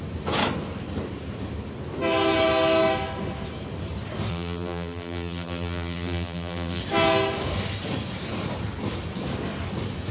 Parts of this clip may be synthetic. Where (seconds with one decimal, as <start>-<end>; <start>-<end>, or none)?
4.3-6.8